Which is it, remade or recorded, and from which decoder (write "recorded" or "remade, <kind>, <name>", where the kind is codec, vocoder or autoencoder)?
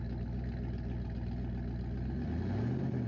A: recorded